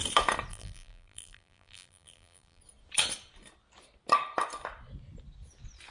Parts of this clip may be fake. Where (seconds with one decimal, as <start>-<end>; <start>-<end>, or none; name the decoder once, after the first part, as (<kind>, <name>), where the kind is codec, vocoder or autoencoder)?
0.5-2.6 (vocoder, BigVGAN v2)